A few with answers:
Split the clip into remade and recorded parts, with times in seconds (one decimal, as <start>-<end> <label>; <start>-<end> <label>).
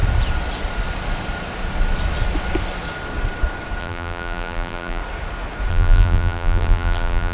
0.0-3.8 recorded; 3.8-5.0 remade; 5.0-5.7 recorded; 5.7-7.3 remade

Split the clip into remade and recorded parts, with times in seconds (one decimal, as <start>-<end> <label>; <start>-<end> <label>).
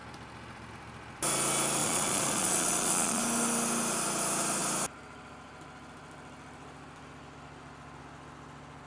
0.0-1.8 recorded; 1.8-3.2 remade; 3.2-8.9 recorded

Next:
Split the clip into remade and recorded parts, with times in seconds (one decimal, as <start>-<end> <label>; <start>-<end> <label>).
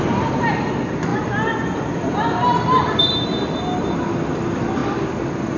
0.0-5.6 recorded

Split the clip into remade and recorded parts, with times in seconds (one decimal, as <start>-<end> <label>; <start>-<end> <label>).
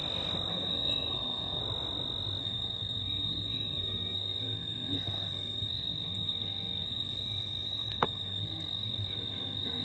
0.0-0.5 recorded; 0.5-1.6 remade; 1.6-2.4 recorded; 2.4-9.8 remade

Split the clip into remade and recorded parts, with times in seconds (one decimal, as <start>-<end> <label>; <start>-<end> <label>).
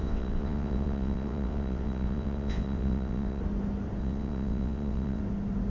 0.0-3.4 remade; 3.4-4.0 recorded; 4.0-5.2 remade; 5.2-5.7 recorded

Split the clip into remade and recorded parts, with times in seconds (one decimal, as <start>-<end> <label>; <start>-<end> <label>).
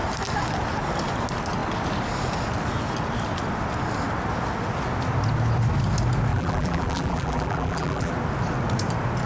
0.0-6.3 recorded; 6.3-8.1 remade; 8.1-9.3 recorded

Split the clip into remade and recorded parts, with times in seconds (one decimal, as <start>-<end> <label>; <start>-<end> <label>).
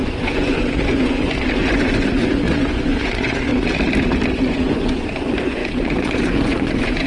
0.0-3.5 remade; 3.5-4.5 recorded; 4.5-7.1 remade